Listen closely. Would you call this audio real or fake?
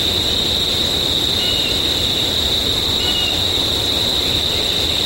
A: real